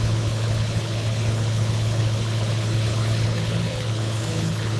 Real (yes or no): no